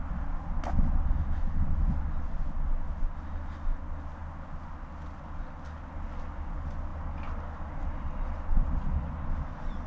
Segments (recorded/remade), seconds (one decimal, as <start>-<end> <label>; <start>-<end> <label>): 0.0-9.9 recorded